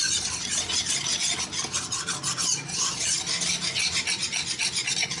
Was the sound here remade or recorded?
recorded